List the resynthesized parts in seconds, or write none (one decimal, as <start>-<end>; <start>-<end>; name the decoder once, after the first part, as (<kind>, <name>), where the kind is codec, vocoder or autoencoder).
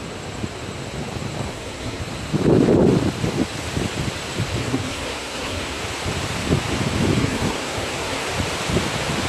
1.5-2.0 (codec, SNAC); 4.6-5.8; 7.2-8.2